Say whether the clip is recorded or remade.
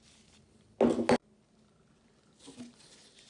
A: recorded